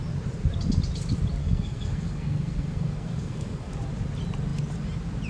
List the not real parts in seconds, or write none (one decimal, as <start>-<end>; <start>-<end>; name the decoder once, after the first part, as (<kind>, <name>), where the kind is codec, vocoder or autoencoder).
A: 1.4-3.7 (codec, SNAC)

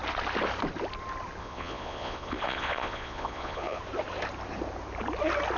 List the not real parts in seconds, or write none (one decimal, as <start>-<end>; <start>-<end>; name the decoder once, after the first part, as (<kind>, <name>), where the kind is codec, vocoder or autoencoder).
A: 1.4-3.8 (vocoder, Vocos)